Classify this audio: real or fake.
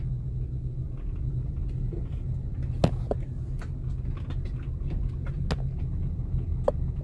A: real